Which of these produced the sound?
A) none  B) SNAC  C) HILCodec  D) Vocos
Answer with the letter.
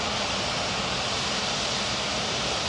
A